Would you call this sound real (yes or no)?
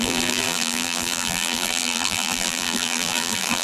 no